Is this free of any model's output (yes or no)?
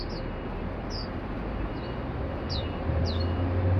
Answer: yes